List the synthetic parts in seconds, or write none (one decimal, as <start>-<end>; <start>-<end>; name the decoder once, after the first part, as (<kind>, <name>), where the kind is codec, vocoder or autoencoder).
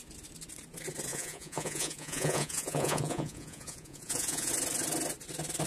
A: 1.1-4.5 (vocoder, Vocos)